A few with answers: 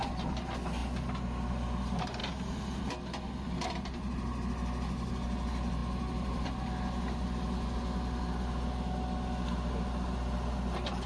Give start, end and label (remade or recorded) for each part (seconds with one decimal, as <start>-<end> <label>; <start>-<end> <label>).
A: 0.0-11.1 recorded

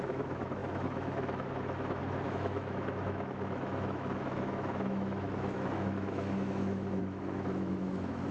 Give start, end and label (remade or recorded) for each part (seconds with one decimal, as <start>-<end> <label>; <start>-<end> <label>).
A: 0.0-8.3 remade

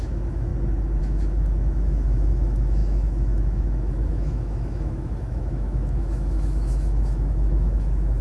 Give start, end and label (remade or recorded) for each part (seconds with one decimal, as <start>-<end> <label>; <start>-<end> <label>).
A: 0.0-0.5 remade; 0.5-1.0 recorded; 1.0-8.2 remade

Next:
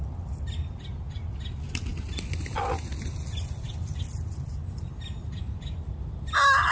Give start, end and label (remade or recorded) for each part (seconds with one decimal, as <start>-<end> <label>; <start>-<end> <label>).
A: 0.0-6.7 recorded